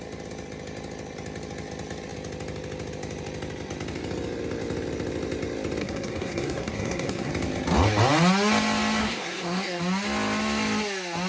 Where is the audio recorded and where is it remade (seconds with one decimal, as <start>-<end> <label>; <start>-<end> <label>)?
0.0-5.8 recorded; 5.8-7.3 remade; 7.3-9.0 recorded; 9.0-9.8 remade; 9.8-11.3 recorded